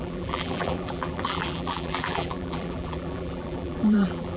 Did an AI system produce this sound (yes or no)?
yes